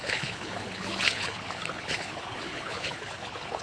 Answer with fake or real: fake